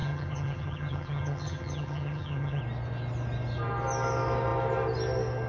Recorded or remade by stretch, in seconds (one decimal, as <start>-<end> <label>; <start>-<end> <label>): 0.0-2.6 remade; 2.6-5.5 recorded